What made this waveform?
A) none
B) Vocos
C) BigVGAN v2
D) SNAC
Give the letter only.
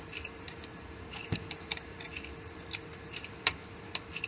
C